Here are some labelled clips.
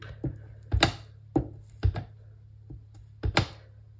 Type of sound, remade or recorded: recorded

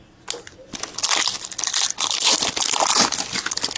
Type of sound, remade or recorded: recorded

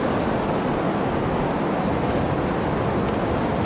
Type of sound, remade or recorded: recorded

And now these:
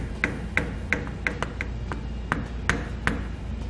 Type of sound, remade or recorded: recorded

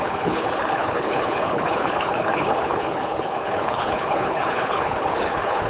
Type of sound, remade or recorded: remade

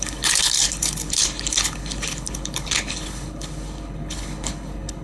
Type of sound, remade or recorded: remade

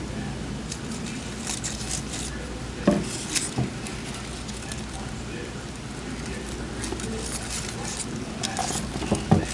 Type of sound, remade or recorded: recorded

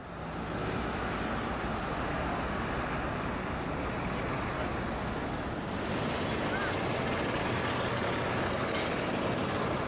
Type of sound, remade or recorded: recorded